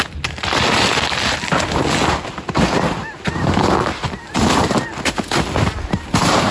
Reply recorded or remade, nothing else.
recorded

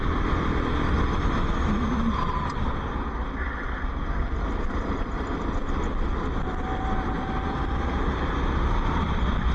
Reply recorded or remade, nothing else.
recorded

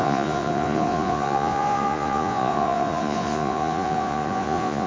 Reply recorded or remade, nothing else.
remade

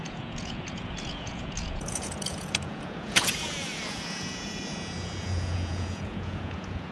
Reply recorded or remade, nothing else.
remade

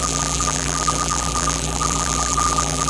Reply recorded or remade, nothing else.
remade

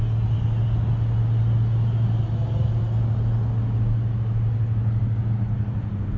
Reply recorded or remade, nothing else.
recorded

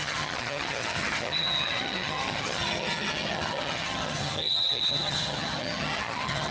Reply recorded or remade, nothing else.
remade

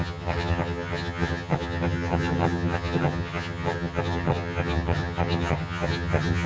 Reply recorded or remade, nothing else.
remade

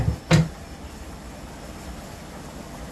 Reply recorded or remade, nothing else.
recorded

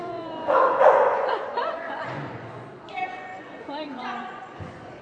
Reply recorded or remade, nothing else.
remade